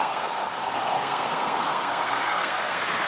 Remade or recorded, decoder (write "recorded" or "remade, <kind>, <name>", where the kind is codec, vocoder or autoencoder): remade, codec, SNAC